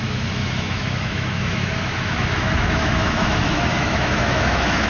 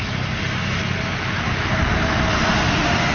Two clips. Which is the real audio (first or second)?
second